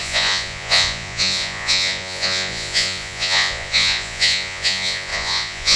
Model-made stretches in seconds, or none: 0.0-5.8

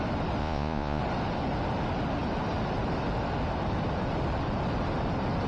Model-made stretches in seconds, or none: 0.4-1.0

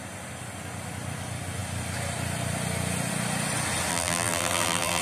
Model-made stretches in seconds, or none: 3.9-5.0

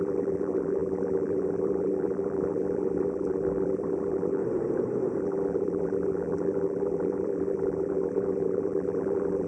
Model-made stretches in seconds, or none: 0.0-4.4; 5.2-9.5

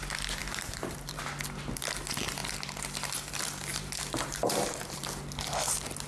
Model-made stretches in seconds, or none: 0.4-1.2; 3.7-5.0

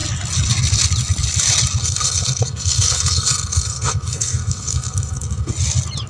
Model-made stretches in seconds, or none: 1.8-5.5

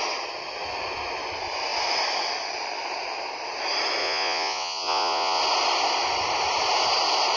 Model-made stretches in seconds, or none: 4.0-5.4

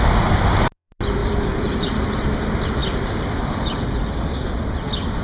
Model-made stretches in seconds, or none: 1.2-2.4; 2.8-3.6